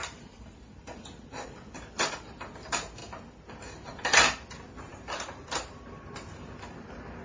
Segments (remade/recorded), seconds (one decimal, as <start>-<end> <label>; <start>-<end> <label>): 0.0-7.2 recorded